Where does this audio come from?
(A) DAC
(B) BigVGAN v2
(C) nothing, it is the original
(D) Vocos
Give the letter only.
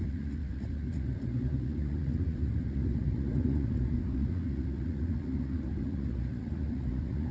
D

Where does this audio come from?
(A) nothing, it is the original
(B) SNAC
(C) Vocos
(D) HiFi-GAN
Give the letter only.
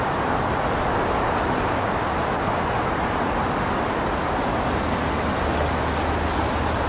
A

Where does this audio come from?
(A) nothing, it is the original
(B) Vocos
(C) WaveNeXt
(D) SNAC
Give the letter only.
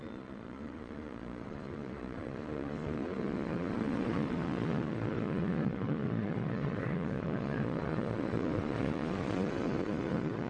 B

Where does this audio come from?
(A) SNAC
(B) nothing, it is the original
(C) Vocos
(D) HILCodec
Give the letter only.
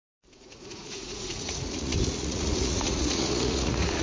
C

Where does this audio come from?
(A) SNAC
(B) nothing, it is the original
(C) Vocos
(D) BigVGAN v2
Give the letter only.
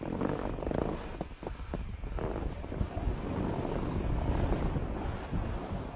B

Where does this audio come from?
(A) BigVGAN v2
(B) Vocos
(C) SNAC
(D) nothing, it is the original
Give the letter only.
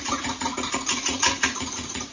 B